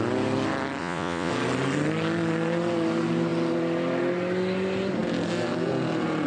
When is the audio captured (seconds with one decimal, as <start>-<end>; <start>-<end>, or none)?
0.0-0.8; 1.3-6.3